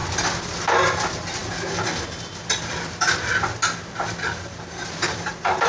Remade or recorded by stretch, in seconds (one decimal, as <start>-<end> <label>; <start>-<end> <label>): 0.0-5.7 recorded